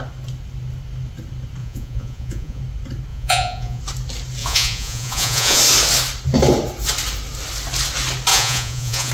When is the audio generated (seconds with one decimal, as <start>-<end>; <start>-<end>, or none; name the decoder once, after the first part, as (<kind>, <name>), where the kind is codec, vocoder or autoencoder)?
1.6-2.6 (vocoder, Vocos); 3.1-3.8; 4.4-5.6; 8.3-9.1